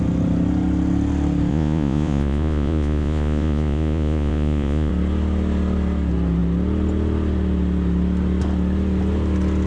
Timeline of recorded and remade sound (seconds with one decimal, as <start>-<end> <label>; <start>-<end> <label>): 0.0-1.5 recorded; 1.5-4.9 remade; 4.9-9.7 recorded